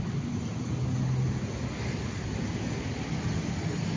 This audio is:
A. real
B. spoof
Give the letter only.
A